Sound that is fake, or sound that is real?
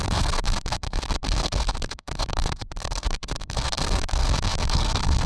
fake